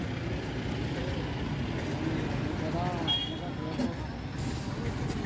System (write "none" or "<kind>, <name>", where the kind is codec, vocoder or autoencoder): none